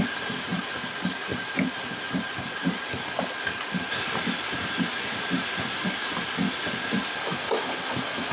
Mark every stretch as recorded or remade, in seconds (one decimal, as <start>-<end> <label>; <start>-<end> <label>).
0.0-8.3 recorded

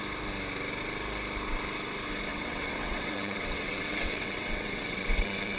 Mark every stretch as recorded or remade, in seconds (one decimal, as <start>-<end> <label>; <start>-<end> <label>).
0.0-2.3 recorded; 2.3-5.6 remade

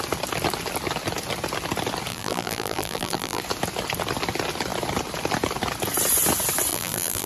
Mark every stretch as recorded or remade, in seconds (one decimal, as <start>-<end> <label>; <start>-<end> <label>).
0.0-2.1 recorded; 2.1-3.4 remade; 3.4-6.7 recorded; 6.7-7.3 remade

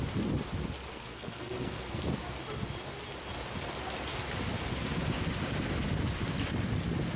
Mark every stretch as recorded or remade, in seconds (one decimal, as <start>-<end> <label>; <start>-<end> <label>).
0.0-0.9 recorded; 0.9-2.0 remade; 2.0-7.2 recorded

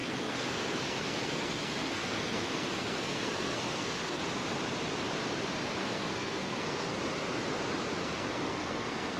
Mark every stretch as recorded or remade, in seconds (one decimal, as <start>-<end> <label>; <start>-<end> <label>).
0.0-4.2 remade; 4.2-5.8 recorded; 5.8-7.0 remade; 7.0-8.0 recorded; 8.0-9.2 remade

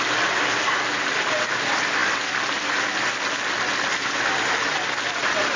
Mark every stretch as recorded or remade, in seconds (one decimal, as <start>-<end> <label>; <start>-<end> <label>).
0.0-5.6 recorded

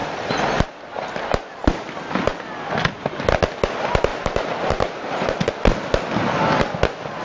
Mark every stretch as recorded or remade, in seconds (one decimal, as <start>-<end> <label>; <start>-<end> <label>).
0.0-0.6 remade; 0.6-4.1 recorded; 4.1-5.5 remade; 5.5-7.2 recorded

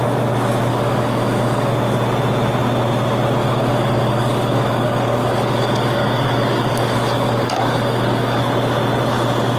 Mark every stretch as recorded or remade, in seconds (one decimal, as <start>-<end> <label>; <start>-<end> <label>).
0.0-0.7 recorded; 0.7-1.7 remade; 1.7-3.4 recorded; 3.4-8.4 remade; 8.4-9.6 recorded